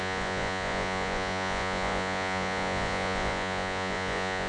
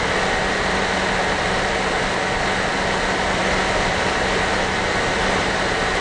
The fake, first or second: first